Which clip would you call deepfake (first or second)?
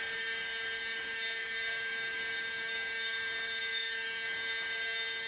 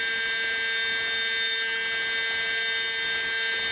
first